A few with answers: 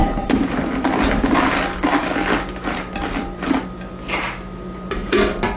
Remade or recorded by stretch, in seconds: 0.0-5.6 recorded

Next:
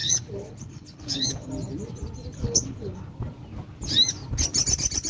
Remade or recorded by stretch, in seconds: 0.0-1.5 remade; 1.5-2.4 recorded; 2.4-3.1 remade; 3.1-5.1 recorded